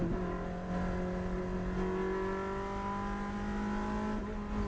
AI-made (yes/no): no